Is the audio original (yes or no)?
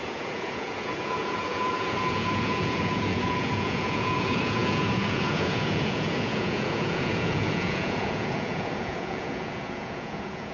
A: no